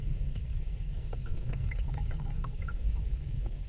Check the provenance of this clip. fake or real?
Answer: fake